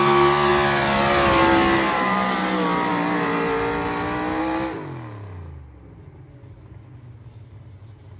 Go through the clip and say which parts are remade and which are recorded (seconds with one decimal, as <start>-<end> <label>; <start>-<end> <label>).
0.0-8.2 recorded